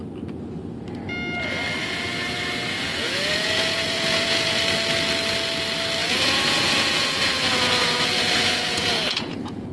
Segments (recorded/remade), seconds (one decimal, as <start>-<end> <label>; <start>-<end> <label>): 0.0-1.8 recorded; 1.8-4.6 remade; 4.6-6.0 recorded; 6.0-9.7 remade